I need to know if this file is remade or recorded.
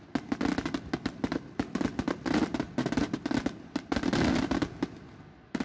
recorded